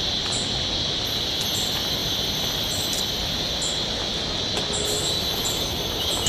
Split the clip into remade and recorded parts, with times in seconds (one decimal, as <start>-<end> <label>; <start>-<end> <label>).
0.0-6.3 recorded